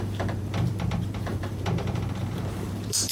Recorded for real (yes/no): no